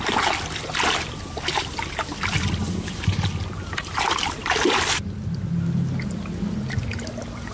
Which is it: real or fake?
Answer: real